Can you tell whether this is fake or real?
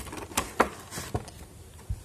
real